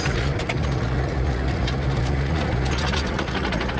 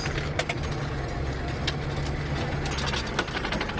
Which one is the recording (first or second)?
second